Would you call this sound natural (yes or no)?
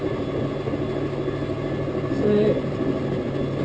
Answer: yes